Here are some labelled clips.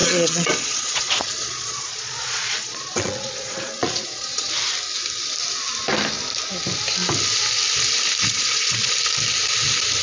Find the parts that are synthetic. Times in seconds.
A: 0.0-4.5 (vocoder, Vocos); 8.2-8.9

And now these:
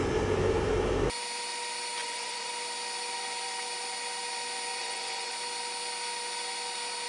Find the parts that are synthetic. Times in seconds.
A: 2.0-2.5 (vocoder, Vocos); 4.8-5.3

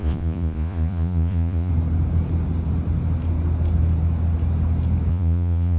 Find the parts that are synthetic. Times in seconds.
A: 0.0-1.7 (vocoder, Vocos); 5.1-5.8